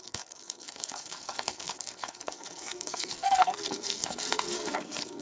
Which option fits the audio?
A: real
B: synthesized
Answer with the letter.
B